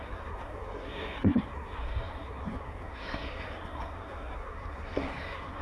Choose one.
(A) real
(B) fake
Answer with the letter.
B